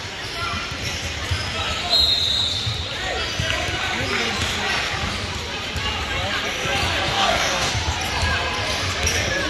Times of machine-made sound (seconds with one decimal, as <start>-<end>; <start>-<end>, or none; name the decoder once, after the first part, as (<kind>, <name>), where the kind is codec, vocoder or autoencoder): 7.1-7.7 (codec, DAC)